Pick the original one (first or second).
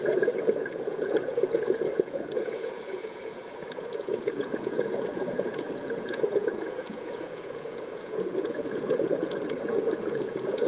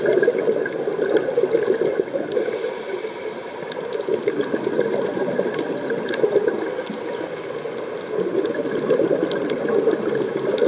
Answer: second